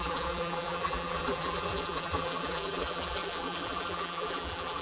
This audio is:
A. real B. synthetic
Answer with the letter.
B